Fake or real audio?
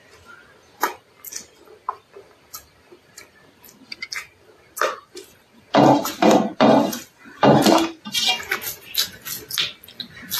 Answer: real